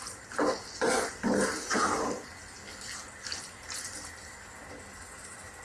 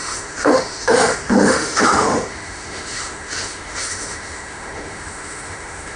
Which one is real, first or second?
first